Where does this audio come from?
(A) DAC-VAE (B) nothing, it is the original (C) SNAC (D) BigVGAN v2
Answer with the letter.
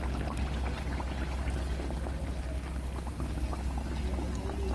B